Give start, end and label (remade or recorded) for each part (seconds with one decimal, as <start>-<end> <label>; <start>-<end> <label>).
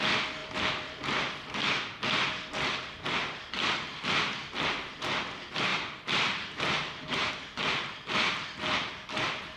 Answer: 0.0-5.7 recorded; 5.7-7.3 remade; 7.3-9.6 recorded